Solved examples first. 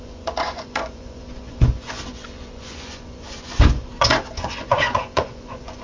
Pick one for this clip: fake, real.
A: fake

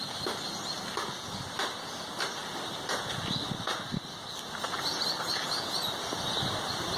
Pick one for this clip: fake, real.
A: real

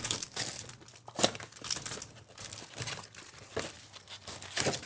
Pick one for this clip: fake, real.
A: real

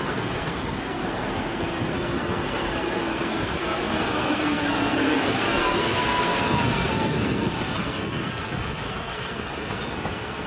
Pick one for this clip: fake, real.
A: fake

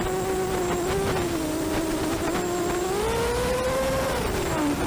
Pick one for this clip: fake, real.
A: real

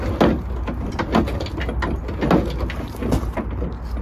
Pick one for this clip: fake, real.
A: real